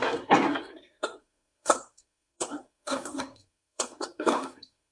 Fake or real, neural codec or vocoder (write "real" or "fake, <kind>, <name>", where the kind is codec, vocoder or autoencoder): fake, codec, SNAC